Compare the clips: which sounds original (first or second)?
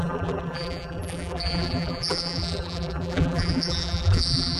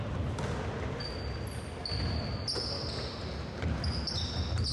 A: second